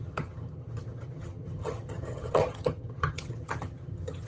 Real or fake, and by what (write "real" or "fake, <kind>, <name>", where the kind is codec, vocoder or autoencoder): fake, vocoder, HiFi-GAN